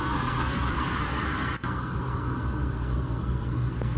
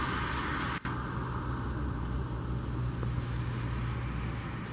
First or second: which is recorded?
second